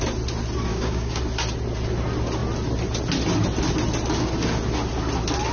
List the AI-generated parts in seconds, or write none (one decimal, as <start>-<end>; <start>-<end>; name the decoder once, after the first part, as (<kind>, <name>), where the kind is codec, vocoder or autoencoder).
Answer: 0.7-1.2 (codec, DAC)